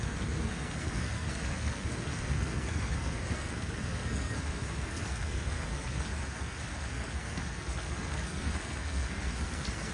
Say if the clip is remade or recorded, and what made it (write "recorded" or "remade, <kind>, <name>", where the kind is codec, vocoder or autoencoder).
remade, codec, SNAC